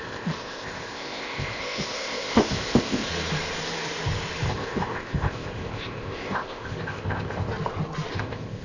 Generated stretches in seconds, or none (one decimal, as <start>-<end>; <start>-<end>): 0.0-3.1; 4.5-7.5; 8.1-8.6